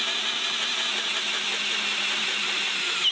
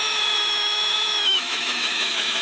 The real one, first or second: first